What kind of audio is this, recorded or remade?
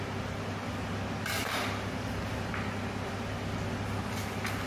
recorded